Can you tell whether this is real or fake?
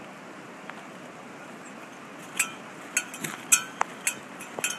real